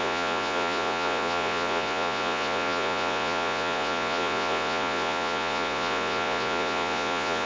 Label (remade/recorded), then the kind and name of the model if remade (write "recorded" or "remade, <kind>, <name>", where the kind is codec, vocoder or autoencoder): remade, vocoder, Vocos